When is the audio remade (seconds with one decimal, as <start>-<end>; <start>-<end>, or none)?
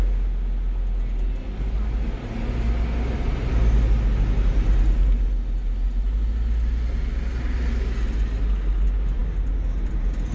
none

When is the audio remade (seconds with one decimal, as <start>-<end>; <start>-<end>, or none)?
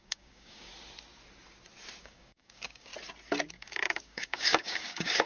0.0-0.7; 2.0-2.9; 3.5-5.3